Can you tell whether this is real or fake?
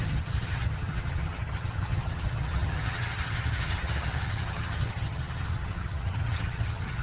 fake